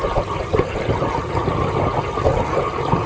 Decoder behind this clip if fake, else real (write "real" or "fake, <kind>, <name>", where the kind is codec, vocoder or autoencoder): real